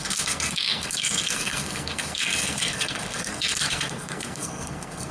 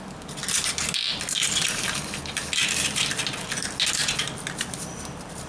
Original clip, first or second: second